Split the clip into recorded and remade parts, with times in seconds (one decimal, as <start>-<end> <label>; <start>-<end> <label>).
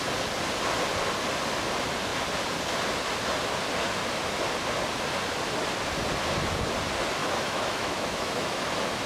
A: 0.0-7.2 recorded; 7.2-8.7 remade; 8.7-9.1 recorded